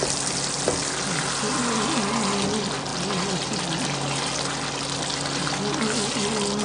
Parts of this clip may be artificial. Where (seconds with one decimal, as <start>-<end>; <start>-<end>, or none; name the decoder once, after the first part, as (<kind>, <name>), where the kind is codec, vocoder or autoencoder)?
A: none